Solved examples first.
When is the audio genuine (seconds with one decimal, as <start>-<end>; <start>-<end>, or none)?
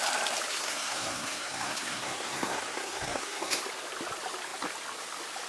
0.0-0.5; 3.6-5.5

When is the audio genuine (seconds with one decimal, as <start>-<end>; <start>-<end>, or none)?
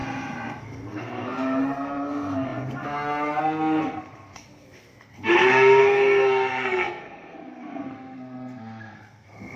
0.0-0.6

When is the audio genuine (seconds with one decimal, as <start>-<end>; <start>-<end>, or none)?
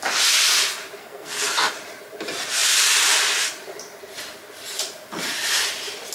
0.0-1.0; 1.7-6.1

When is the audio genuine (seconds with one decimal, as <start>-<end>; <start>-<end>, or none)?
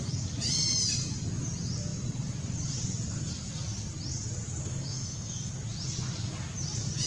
0.0-4.6; 5.5-7.1